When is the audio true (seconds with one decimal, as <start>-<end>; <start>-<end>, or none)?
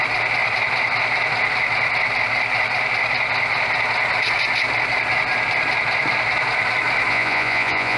0.0-7.1